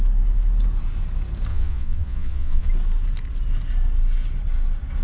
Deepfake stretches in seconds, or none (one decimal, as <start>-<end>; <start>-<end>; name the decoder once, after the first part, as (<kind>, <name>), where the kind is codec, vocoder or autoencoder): 1.5-2.7 (vocoder, Vocos)